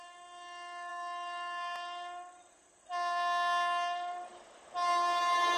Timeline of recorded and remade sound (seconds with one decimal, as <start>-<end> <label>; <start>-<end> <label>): 0.0-5.6 recorded